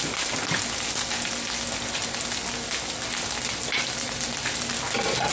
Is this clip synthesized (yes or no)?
no